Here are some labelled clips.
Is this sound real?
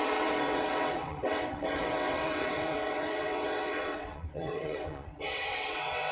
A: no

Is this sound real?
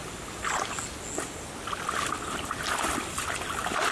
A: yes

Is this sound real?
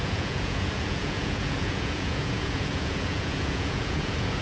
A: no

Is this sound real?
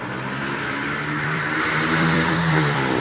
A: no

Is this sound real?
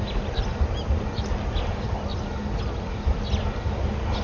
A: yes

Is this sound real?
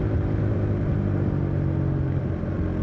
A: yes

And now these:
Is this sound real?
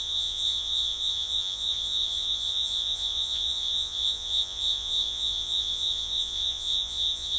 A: no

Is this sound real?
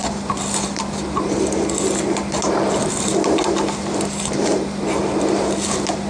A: yes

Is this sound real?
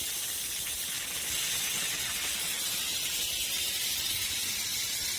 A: yes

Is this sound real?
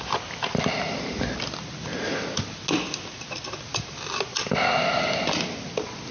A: yes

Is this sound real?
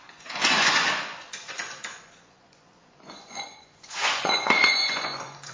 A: no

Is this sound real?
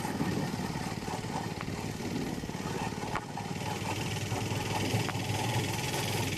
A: yes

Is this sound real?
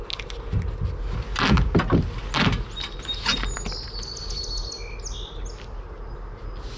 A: yes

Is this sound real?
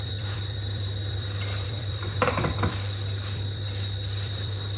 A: no